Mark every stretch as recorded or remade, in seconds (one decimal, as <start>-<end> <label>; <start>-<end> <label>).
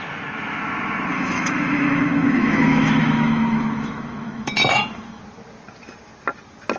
0.0-1.1 recorded; 1.1-5.2 remade; 5.2-6.8 recorded